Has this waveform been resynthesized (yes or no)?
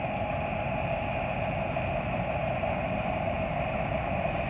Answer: no